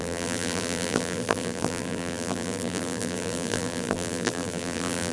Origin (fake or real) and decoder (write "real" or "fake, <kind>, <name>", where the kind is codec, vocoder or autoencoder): fake, vocoder, BigVGAN v2